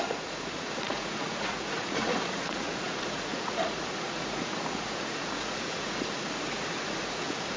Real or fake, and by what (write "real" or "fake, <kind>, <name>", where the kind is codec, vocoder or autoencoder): fake, vocoder, Vocos